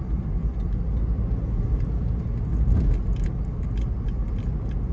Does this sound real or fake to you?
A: real